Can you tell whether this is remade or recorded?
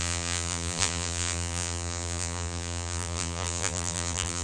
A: remade